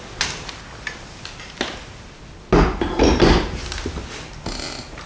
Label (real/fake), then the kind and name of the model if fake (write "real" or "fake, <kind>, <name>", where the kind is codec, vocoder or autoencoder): real